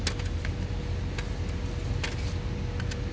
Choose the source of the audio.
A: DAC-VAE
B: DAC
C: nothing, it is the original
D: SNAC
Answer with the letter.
C